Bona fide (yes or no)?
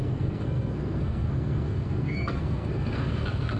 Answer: no